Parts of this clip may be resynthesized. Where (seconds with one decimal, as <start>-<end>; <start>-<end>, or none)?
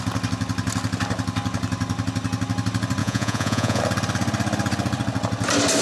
3.0-3.8